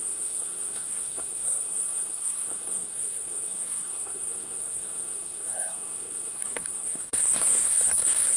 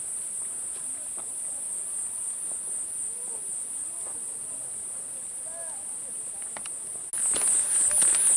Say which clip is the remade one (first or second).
first